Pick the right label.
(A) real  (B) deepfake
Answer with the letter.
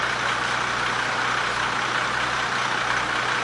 A